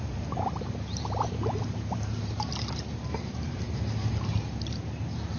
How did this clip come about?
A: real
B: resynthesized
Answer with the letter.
B